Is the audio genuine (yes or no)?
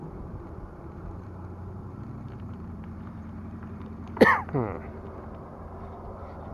no